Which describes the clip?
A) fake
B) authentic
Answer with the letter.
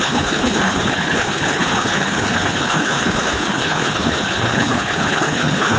A